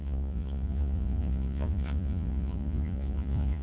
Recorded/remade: remade